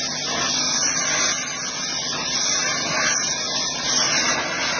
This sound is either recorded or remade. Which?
recorded